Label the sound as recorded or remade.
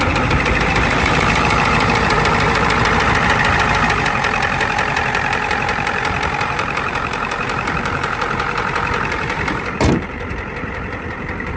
remade